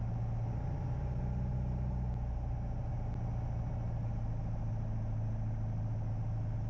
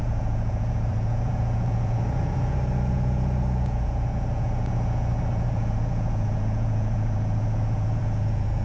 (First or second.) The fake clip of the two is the second